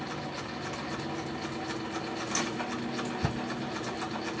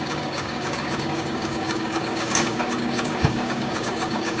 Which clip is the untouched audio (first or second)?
first